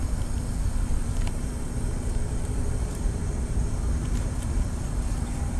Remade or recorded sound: remade